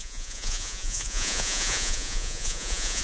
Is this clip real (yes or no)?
no